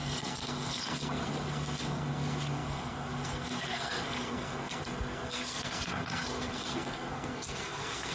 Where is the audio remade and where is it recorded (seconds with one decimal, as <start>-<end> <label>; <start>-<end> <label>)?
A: 0.0-8.1 remade